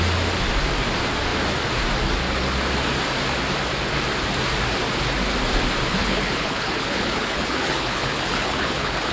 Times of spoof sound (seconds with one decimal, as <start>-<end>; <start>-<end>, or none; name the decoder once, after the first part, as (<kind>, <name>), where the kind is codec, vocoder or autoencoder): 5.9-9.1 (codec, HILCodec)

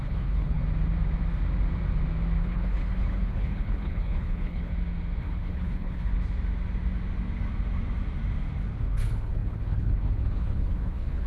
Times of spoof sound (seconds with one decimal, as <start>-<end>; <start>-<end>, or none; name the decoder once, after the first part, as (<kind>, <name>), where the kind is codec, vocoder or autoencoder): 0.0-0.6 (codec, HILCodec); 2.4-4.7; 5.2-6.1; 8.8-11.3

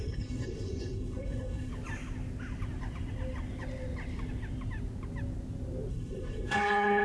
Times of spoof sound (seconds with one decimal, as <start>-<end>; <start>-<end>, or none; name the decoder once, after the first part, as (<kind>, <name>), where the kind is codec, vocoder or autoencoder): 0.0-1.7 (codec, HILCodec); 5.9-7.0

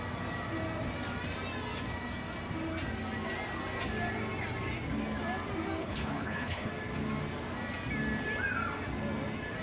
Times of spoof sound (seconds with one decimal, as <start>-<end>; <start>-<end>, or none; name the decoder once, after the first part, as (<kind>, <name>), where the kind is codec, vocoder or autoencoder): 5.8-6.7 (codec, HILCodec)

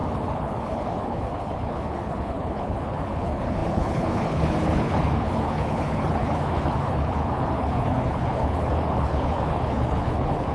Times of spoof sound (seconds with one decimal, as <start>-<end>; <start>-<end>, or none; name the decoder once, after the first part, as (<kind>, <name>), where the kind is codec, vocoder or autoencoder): 0.0-10.5 (codec, HILCodec)